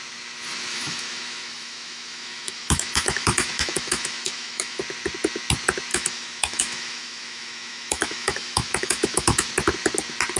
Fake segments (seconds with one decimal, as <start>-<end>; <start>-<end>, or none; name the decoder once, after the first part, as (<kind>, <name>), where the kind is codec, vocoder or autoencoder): 0.7-4.8 (autoencoder, DAC-VAE); 5.9-9.5